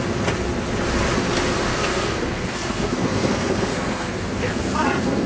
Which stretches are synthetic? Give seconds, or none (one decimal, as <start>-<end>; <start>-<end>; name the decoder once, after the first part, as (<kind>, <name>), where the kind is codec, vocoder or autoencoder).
1.7-5.3 (codec, SNAC)